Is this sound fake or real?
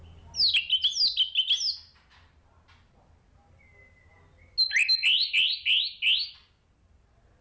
real